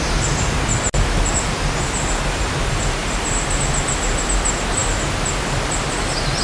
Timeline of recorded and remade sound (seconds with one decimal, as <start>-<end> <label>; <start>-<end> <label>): 0.0-6.4 recorded